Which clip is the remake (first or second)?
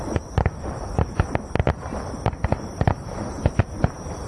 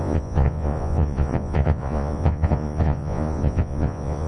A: second